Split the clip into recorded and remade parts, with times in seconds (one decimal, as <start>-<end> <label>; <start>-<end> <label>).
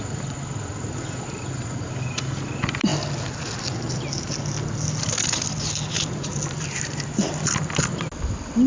0.0-8.7 recorded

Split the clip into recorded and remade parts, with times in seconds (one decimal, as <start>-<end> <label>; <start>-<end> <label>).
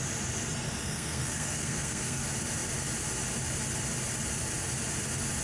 0.0-0.8 recorded; 0.8-2.2 remade; 2.2-5.4 recorded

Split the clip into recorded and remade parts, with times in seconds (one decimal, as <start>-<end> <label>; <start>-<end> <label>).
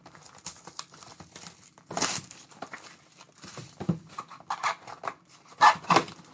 0.0-6.3 recorded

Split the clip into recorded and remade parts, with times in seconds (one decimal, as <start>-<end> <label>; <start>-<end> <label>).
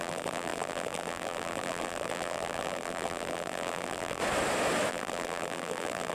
0.0-4.2 remade; 4.2-4.9 recorded; 4.9-6.1 remade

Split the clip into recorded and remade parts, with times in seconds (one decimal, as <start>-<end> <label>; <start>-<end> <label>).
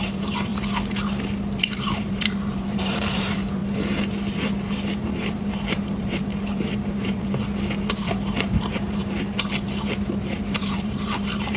0.0-0.5 remade; 0.5-1.6 recorded; 1.6-3.6 remade; 3.6-4.9 recorded; 4.9-7.4 remade; 7.4-8.1 recorded; 8.1-9.0 remade; 9.0-10.5 recorded; 10.5-11.6 remade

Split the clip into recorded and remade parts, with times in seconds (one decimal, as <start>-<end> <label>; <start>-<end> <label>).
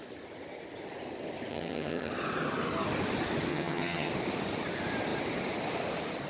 0.0-1.5 recorded; 1.5-2.1 remade; 2.1-3.5 recorded; 3.5-4.1 remade; 4.1-6.3 recorded